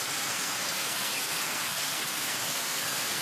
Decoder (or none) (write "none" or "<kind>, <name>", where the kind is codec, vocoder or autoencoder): codec, SNAC